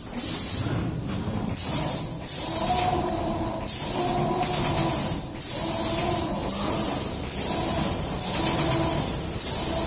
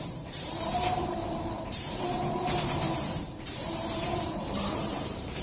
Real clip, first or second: first